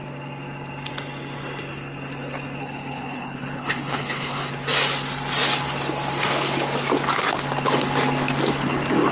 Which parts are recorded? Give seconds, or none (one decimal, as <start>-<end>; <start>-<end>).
0.0-2.6; 4.5-9.1